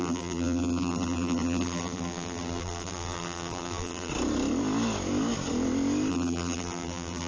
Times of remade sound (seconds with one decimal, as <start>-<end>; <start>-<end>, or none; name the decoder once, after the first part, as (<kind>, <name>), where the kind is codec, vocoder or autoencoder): 0.0-4.1 (vocoder, BigVGAN v2); 6.1-7.3